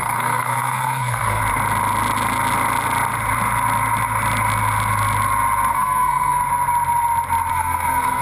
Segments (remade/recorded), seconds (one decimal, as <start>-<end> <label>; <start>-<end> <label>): 0.0-1.4 remade; 1.4-5.7 recorded; 5.7-6.4 remade; 6.4-7.5 recorded; 7.5-8.2 remade